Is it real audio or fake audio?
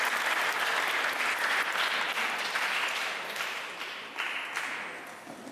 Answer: real